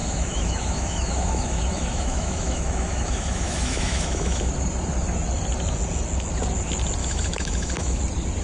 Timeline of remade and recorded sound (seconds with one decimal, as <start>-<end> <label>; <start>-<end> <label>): 0.0-4.5 remade; 4.5-7.0 recorded; 7.0-8.0 remade; 8.0-8.4 recorded

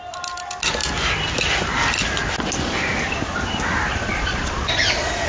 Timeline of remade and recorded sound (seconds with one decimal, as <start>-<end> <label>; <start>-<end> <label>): 0.0-3.9 recorded; 3.9-4.6 remade; 4.6-5.3 recorded

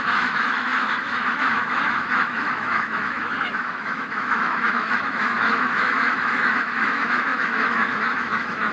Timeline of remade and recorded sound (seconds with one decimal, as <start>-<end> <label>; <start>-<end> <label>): 0.0-8.7 remade

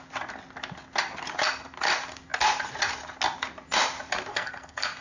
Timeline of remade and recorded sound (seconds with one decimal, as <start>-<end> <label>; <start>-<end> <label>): 0.0-4.3 recorded; 4.3-5.0 remade

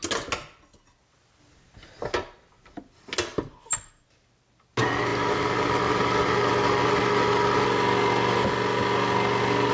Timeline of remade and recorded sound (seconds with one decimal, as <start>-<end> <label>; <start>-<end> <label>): 0.0-9.7 recorded